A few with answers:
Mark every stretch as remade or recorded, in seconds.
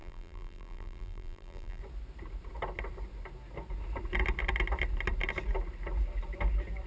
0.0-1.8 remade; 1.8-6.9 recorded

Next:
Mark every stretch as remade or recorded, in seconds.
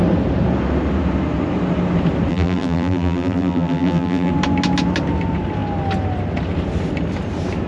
0.0-2.3 recorded; 2.3-4.3 remade; 4.3-7.7 recorded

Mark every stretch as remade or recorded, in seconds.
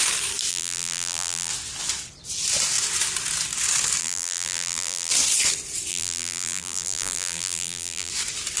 0.0-0.5 recorded; 0.5-1.5 remade; 1.5-4.0 recorded; 4.0-5.1 remade; 5.1-5.9 recorded; 5.9-8.1 remade; 8.1-8.6 recorded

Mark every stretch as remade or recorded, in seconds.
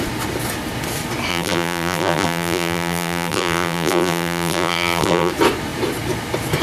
0.0-1.3 recorded; 1.3-5.3 remade; 5.3-6.6 recorded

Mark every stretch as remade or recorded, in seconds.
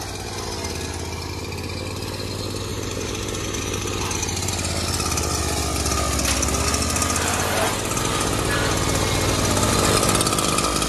0.0-2.7 recorded; 2.7-4.5 remade; 4.5-10.9 recorded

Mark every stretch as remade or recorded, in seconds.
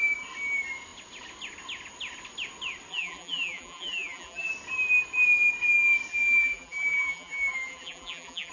0.0-2.9 recorded; 2.9-4.5 remade; 4.5-6.1 recorded; 6.1-8.5 remade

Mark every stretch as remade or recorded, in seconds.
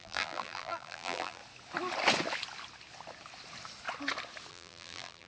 0.0-1.4 remade; 1.4-4.5 recorded; 4.5-5.3 remade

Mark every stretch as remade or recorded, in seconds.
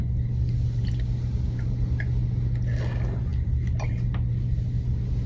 0.0-3.3 recorded; 3.3-3.9 remade; 3.9-5.3 recorded